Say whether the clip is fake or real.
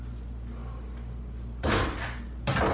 real